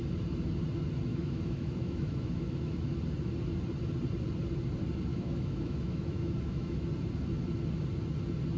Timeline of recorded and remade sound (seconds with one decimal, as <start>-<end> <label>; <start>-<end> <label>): 0.0-1.1 recorded; 1.1-2.9 remade; 2.9-5.1 recorded; 5.1-6.9 remade; 6.9-8.6 recorded